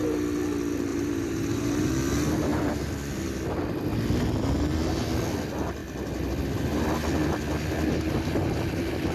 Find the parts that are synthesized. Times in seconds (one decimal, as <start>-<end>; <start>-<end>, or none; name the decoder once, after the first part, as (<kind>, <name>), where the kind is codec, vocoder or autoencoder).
0.9-1.9 (vocoder, BigVGAN v2)